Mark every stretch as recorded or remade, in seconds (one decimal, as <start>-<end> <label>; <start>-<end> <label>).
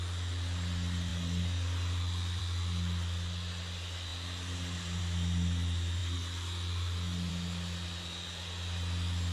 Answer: 0.0-9.3 recorded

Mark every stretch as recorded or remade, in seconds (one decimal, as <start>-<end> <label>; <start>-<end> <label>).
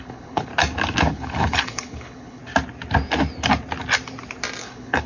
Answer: 0.0-0.5 remade; 0.5-1.1 recorded; 1.1-2.4 remade; 2.4-4.6 recorded; 4.6-5.1 remade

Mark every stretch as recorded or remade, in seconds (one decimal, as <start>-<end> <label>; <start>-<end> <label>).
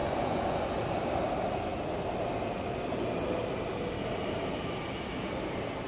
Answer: 0.0-0.8 remade; 0.8-5.9 recorded